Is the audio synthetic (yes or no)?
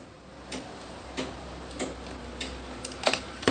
no